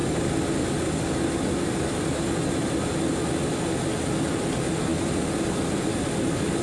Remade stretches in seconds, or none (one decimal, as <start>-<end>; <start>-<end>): none